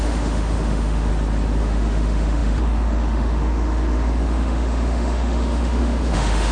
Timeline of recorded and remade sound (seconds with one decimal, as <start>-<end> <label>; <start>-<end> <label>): 0.0-1.1 remade; 1.1-1.6 recorded; 1.6-6.5 remade